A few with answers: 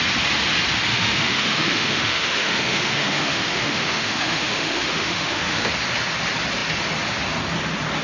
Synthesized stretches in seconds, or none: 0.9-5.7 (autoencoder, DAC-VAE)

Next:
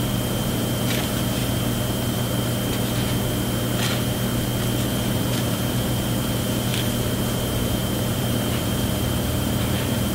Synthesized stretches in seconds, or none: 0.0-1.4 (vocoder, BigVGAN v2); 5.1-6.7; 7.3-10.1